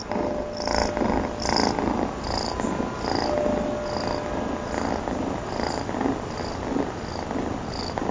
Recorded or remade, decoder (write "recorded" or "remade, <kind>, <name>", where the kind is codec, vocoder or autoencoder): recorded